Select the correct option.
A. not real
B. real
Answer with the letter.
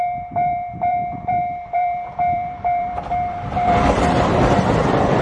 A